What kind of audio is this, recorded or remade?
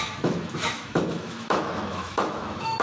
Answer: remade